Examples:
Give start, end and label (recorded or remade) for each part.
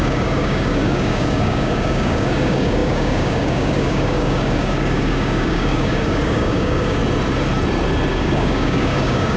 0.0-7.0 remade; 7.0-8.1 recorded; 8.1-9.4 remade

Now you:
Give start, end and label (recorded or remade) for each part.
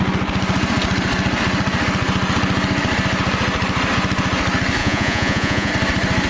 0.0-4.8 recorded; 4.8-5.7 remade; 5.7-6.3 recorded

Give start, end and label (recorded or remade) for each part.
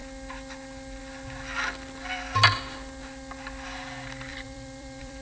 0.0-4.3 recorded; 4.3-5.2 remade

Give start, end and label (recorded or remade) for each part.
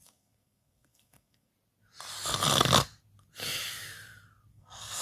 0.0-1.5 remade; 1.5-4.5 recorded; 4.5-5.0 remade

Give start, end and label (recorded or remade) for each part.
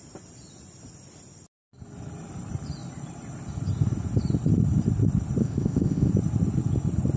0.0-5.4 recorded; 5.4-6.1 remade; 6.1-7.2 recorded